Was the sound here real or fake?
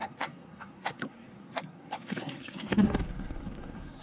fake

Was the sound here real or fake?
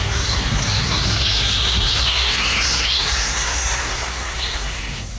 fake